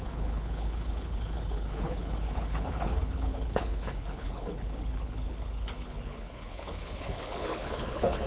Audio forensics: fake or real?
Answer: fake